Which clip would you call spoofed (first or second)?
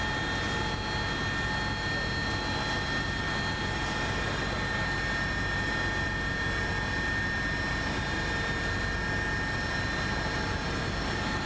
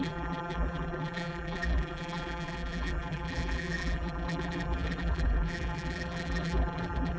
second